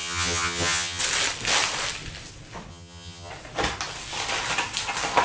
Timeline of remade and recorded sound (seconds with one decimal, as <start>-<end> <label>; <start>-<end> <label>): 0.0-1.0 remade; 1.0-2.7 recorded; 2.7-3.3 remade; 3.3-5.2 recorded